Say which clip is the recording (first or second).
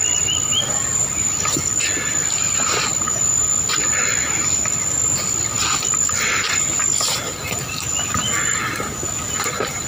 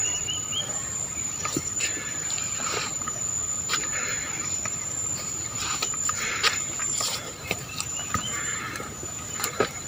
first